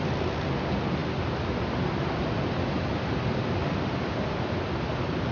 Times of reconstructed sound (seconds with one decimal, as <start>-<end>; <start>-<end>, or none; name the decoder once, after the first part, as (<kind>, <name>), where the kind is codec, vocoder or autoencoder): none